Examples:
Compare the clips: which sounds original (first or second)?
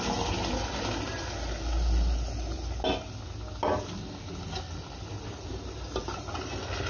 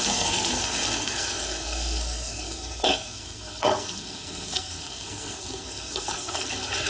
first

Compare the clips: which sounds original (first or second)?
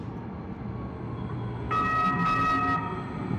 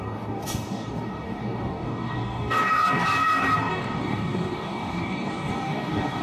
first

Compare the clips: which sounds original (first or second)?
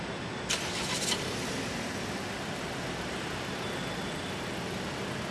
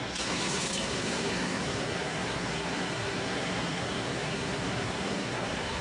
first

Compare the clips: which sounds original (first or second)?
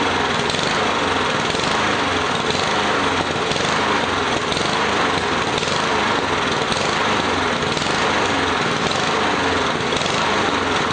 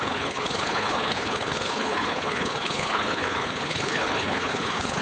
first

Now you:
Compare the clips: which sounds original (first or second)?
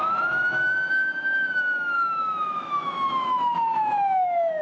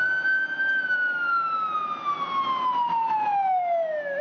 second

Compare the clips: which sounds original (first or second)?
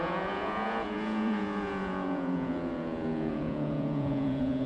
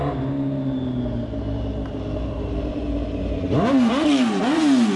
second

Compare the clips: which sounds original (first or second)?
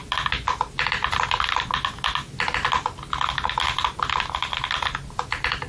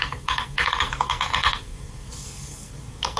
first